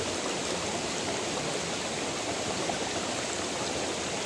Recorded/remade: recorded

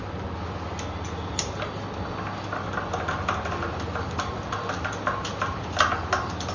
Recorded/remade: recorded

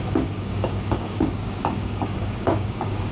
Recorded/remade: remade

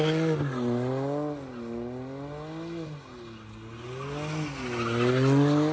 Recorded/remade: recorded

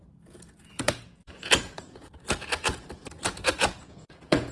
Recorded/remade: remade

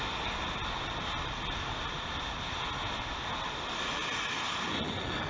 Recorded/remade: recorded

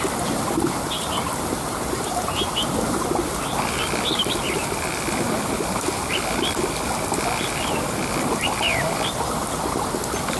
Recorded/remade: recorded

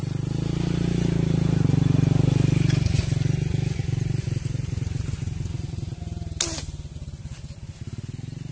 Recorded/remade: recorded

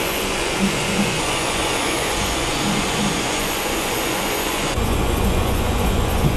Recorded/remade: remade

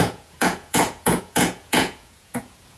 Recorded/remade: remade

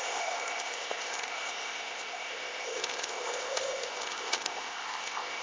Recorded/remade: remade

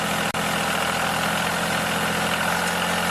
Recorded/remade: recorded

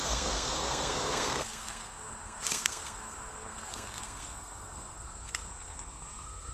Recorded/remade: remade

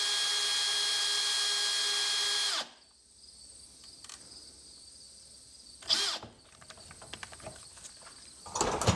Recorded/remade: recorded